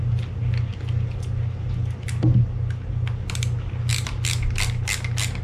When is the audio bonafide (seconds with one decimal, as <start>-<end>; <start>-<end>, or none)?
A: 0.0-5.4